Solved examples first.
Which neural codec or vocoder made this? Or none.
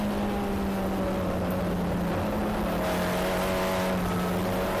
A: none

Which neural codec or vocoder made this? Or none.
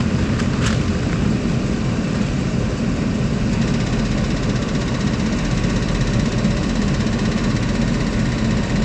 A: none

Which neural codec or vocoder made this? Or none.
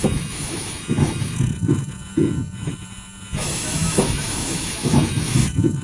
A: autoencoder, DAC-VAE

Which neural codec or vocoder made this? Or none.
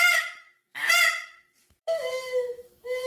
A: autoencoder, DAC-VAE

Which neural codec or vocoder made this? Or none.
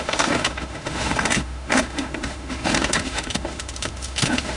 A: autoencoder, DAC-VAE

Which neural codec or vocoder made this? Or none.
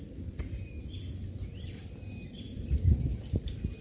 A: none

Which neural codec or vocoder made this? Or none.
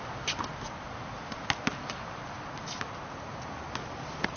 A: none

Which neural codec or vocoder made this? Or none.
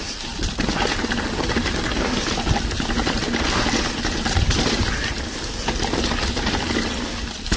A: none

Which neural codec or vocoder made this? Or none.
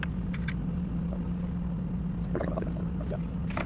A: none